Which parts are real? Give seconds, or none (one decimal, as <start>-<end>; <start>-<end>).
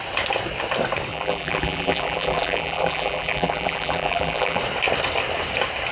0.0-1.1; 4.6-5.9